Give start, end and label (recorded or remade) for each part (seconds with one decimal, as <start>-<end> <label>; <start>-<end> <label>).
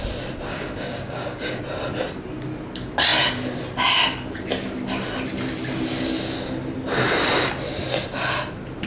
0.0-0.5 recorded; 0.5-1.6 remade; 1.6-8.9 recorded